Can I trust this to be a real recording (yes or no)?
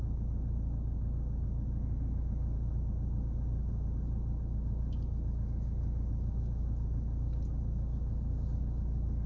yes